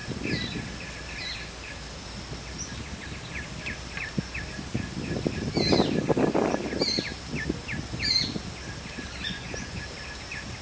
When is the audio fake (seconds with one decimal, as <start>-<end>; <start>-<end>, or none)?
9.3-9.8